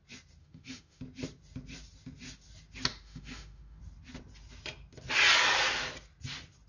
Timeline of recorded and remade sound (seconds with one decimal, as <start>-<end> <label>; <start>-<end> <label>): 0.0-0.4 recorded; 0.4-1.0 remade; 1.0-2.9 recorded; 2.9-3.8 remade; 3.8-6.7 recorded